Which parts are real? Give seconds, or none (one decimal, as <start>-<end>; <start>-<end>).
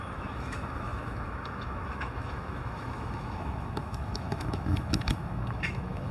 none